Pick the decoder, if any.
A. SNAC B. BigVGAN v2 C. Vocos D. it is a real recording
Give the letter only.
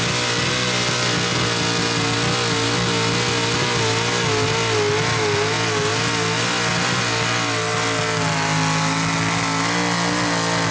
D